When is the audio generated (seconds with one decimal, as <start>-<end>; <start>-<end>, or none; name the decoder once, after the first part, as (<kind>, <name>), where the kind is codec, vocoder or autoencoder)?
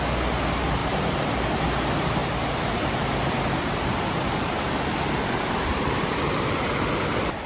none